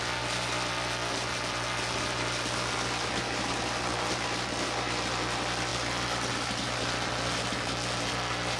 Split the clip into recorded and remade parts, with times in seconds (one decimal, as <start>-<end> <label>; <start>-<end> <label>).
0.0-8.6 recorded

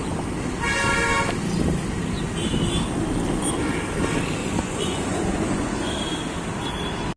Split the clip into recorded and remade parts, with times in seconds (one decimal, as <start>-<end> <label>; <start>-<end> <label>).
0.0-4.4 recorded; 4.4-5.9 remade; 5.9-7.2 recorded